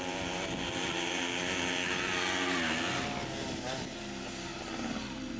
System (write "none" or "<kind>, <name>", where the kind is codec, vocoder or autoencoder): none